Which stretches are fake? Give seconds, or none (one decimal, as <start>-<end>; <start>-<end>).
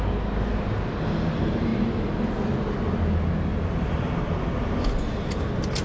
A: none